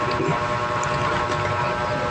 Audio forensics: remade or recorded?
recorded